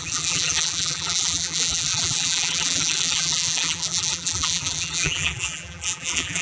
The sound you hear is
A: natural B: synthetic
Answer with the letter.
B